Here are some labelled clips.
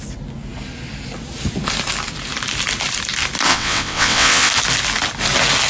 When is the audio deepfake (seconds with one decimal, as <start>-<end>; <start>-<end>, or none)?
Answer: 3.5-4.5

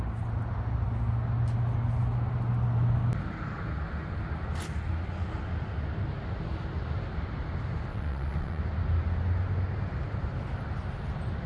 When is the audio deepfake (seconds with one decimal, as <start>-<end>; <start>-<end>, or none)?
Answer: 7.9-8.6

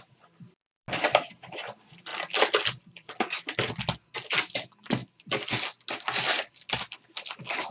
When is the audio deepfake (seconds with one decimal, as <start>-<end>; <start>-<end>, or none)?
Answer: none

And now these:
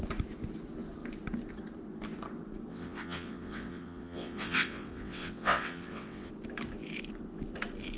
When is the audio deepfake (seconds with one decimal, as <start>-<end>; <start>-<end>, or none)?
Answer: 2.7-6.3

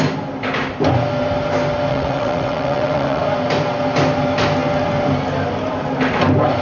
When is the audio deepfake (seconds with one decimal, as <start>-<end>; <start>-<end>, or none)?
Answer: 1.9-3.2